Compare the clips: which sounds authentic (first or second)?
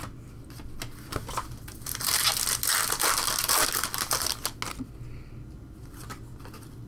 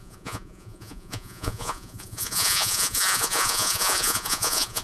first